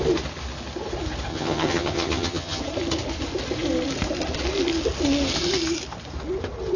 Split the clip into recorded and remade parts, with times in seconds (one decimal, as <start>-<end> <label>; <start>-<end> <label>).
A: 0.0-1.3 recorded; 1.3-2.6 remade; 2.6-6.8 recorded